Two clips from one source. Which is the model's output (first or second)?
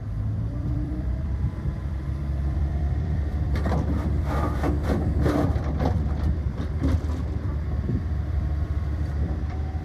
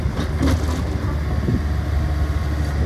first